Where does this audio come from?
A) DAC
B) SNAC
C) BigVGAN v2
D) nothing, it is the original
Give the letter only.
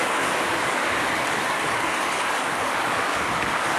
A